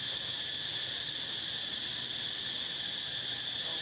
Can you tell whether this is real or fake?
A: real